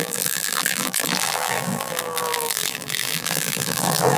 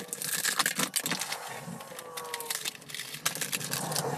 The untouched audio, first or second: second